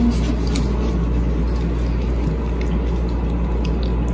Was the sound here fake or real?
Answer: real